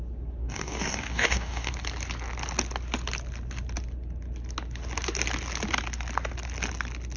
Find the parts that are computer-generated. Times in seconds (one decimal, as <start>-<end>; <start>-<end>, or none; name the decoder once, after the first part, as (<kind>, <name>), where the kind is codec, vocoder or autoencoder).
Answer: 0.4-1.7 (codec, DAC)